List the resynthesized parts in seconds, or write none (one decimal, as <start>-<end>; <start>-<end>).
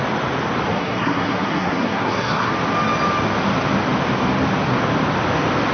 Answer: 0.7-2.5